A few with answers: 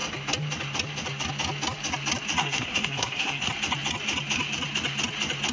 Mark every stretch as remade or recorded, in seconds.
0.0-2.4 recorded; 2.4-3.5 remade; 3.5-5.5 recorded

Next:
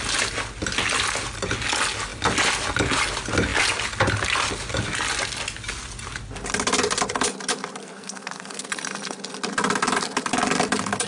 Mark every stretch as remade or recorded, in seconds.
0.0-7.8 recorded; 7.8-8.7 remade; 8.7-11.1 recorded

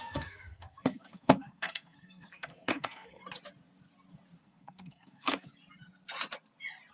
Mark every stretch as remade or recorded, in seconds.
0.0-3.2 remade; 3.2-4.4 recorded; 4.4-5.5 remade; 5.5-6.9 recorded

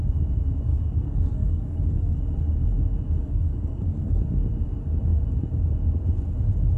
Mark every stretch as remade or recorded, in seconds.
0.0-0.7 recorded; 0.7-2.2 remade; 2.2-3.2 recorded; 3.2-4.2 remade; 4.2-6.8 recorded

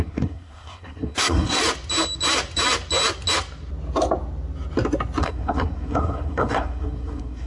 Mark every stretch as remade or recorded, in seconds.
0.0-1.6 remade; 1.6-5.2 recorded; 5.2-7.5 remade

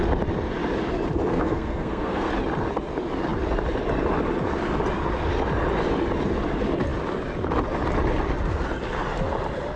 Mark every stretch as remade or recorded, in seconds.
0.0-1.3 recorded; 1.3-2.3 remade; 2.3-9.8 recorded

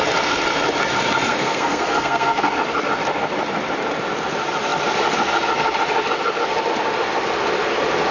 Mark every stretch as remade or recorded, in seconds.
0.0-1.3 recorded; 1.3-2.5 remade; 2.5-8.1 recorded